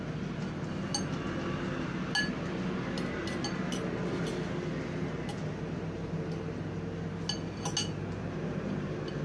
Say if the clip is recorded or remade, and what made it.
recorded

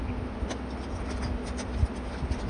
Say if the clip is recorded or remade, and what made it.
recorded